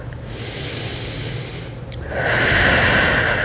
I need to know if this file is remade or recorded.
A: recorded